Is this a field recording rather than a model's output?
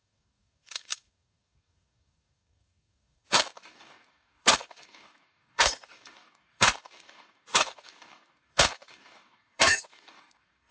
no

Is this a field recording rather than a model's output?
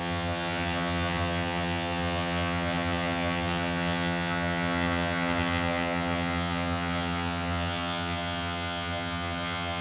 no